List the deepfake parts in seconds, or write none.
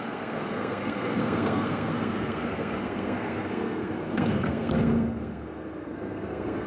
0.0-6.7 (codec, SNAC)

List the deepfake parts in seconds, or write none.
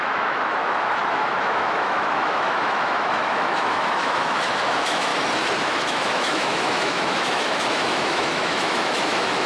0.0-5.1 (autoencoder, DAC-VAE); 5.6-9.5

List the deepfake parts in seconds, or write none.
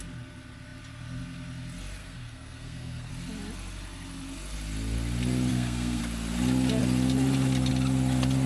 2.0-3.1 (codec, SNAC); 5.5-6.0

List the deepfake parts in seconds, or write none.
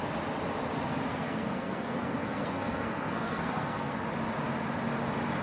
1.1-4.0 (codec, SNAC)